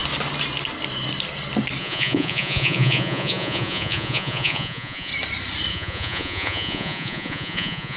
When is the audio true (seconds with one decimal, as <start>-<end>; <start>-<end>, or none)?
0.0-1.8; 5.1-5.7